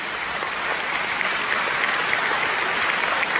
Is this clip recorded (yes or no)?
yes